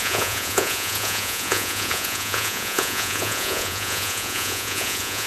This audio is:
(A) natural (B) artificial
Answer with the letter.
B